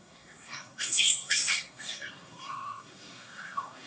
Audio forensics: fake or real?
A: fake